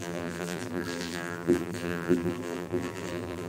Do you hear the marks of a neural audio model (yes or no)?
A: yes